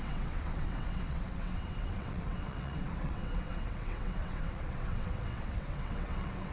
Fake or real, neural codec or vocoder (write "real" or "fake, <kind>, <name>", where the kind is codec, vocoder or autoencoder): fake, vocoder, WaveNeXt